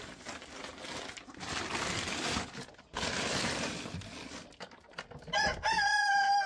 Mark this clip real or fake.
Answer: real